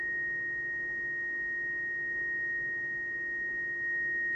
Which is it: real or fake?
real